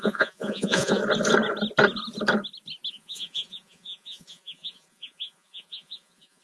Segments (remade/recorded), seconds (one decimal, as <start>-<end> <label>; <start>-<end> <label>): 0.0-1.0 remade; 1.0-2.9 recorded; 2.9-6.4 remade